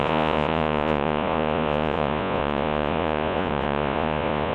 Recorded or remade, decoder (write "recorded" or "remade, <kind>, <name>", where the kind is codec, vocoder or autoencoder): remade, vocoder, Vocos